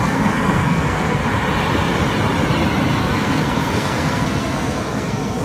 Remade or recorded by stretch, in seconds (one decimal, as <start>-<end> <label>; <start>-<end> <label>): 0.0-1.2 remade; 1.2-3.0 recorded; 3.0-5.4 remade